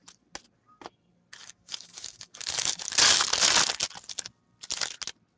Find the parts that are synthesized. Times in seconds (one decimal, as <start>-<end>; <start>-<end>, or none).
1.4-2.8